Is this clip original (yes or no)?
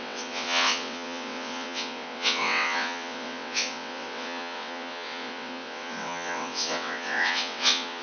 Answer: no